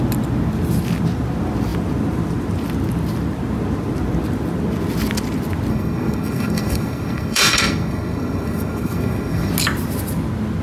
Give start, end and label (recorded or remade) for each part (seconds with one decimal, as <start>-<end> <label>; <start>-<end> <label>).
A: 0.0-5.7 recorded; 5.7-9.5 remade; 9.5-10.6 recorded